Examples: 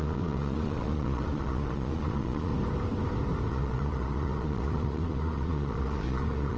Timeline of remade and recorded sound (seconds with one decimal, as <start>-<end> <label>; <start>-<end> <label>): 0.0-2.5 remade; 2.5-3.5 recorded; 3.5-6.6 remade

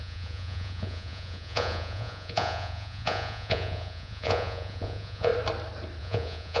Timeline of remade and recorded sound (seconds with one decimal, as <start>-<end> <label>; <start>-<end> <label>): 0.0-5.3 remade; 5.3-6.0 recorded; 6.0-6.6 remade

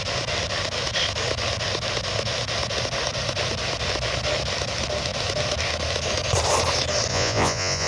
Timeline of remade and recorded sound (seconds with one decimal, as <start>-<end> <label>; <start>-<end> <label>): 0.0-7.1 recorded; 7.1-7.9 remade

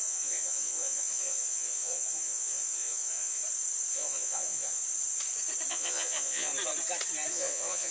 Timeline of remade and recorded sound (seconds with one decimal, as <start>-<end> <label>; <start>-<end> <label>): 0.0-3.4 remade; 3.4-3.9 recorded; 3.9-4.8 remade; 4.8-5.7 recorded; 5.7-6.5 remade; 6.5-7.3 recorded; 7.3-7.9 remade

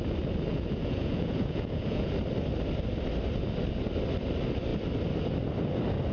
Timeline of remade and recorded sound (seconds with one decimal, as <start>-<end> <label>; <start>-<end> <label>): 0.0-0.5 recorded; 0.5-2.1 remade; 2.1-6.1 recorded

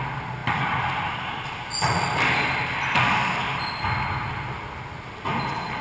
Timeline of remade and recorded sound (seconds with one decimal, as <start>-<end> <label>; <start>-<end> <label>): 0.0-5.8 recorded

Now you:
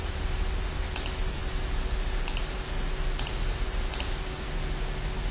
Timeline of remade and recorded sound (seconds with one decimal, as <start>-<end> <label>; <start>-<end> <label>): 0.0-5.3 recorded

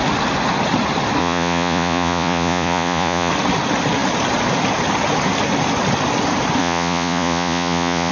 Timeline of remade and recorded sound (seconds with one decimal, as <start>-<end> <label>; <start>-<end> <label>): 0.0-1.2 recorded; 1.2-3.3 remade; 3.3-6.6 recorded; 6.6-8.1 remade